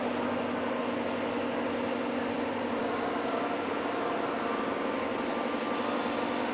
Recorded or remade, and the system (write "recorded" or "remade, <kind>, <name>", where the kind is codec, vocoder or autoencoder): recorded